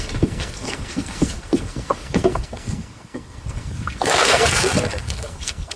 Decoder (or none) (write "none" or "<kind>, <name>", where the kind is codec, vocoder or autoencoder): codec, SNAC